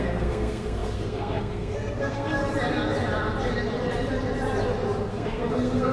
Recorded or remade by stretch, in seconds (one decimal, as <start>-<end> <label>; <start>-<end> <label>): 0.0-2.4 remade; 2.4-5.1 recorded; 5.1-5.9 remade